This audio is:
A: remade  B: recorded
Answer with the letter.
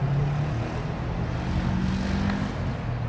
B